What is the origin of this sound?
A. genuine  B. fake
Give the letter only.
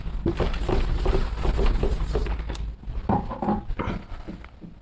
A